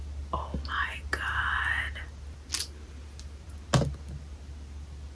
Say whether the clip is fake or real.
real